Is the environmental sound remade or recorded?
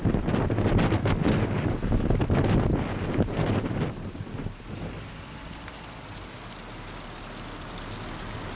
recorded